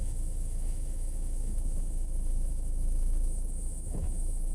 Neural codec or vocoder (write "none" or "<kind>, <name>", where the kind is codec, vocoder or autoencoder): autoencoder, DAC-VAE